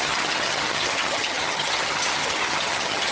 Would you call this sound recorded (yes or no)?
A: no